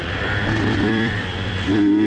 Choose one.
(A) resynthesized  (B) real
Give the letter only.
A